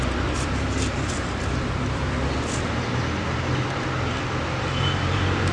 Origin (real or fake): fake